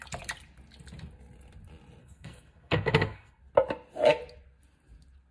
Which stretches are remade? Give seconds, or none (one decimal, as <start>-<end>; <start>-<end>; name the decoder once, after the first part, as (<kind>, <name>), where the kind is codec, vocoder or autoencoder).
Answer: 2.0-3.4 (codec, SNAC)